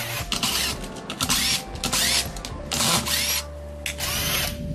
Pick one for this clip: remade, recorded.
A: recorded